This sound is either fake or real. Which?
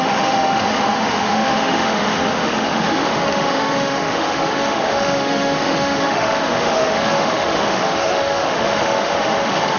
fake